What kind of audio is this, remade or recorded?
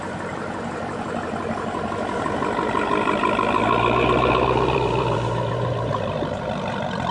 remade